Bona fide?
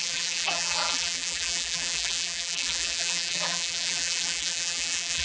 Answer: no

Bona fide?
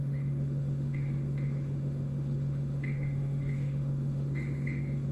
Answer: no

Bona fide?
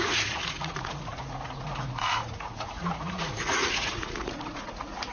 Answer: no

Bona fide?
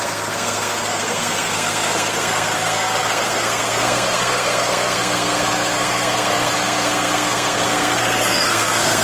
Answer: no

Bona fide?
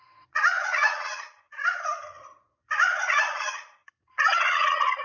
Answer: no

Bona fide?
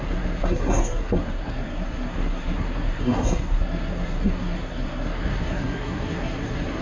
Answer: no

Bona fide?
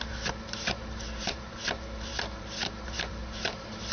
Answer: no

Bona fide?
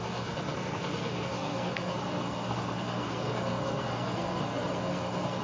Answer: no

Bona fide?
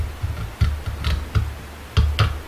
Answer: yes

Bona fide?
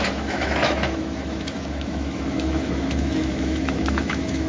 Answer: no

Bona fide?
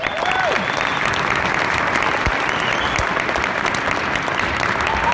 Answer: yes